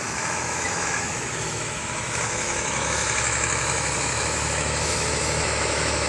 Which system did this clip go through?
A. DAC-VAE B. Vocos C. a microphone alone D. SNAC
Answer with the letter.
A